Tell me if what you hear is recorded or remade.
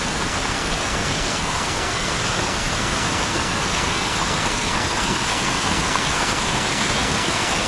remade